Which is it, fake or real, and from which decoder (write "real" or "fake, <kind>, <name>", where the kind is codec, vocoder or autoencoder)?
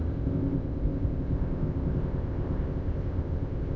fake, codec, ZipCodec